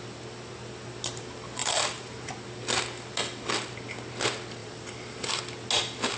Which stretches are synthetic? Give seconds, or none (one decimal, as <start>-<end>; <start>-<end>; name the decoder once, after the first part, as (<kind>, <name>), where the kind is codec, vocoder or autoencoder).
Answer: 1.6-2.3 (vocoder, BigVGAN v2); 4.6-5.4